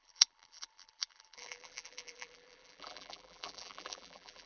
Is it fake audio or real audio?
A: fake